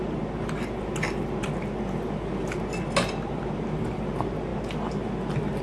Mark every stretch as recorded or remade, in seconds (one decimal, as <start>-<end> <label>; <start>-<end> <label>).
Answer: 0.0-5.6 recorded